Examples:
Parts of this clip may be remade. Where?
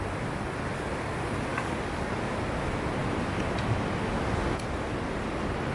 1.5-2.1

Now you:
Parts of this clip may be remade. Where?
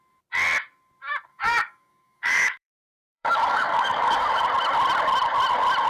1.3-4.4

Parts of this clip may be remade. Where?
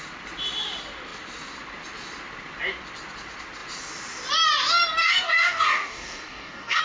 5.0-6.8